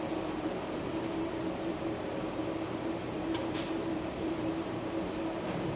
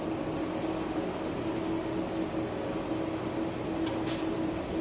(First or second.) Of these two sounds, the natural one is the second